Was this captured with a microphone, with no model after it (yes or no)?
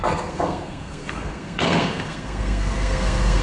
no